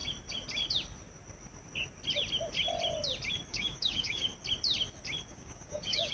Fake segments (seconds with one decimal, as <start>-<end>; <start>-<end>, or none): 3.5-4.3; 5.3-6.1